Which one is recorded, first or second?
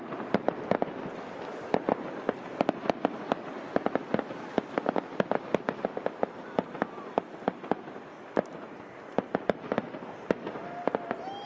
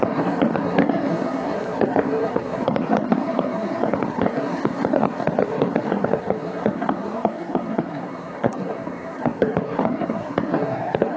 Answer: first